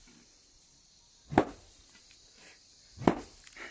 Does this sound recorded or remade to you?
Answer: recorded